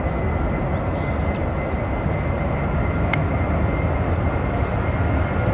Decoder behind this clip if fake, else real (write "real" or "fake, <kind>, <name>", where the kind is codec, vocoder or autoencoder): real